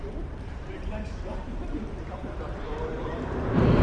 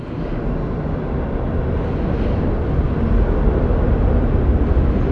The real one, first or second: second